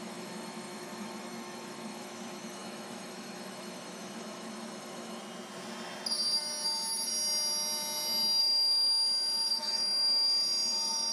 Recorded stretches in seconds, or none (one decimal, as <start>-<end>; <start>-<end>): 5.2-8.4